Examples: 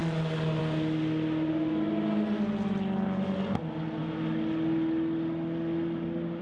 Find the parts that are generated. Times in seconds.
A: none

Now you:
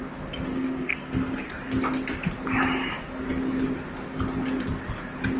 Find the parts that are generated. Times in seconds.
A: 0.5-1.5 (codec, SNAC)

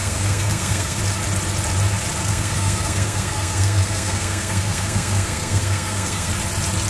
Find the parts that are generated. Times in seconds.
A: 0.0-1.0 (codec, SNAC); 2.2-6.3

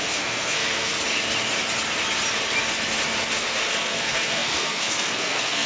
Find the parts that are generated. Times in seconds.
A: 0.0-0.9 (codec, SNAC); 3.3-5.7

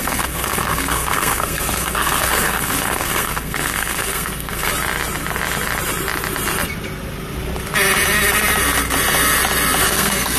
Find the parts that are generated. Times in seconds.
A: 0.0-4.7 (codec, SNAC); 9.8-10.4